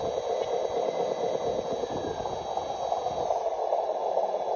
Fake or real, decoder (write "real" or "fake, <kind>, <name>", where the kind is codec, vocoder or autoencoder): real